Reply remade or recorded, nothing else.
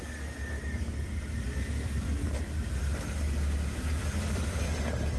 recorded